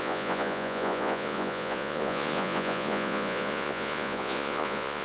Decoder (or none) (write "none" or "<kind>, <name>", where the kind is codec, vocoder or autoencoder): vocoder, Vocos